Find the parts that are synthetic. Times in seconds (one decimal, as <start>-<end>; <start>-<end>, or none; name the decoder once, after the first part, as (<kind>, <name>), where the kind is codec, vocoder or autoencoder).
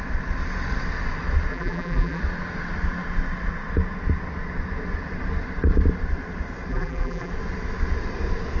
1.5-2.2 (vocoder, BigVGAN v2); 6.7-7.3